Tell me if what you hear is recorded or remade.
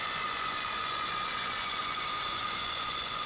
remade